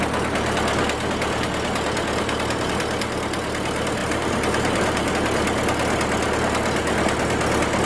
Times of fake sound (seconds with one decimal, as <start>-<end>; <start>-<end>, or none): 4.0-5.1